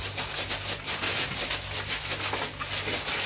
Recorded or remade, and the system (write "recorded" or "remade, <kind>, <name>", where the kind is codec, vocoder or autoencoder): recorded